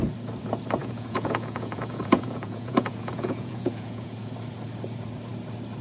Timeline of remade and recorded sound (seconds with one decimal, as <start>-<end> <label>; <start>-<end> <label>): 0.0-0.8 recorded; 0.8-4.3 remade; 4.3-5.8 recorded